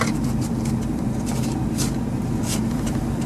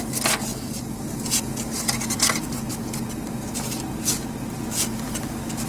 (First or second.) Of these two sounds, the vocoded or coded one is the first